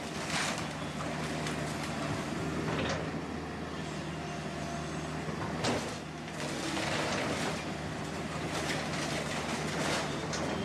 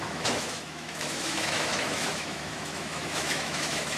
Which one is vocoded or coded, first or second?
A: second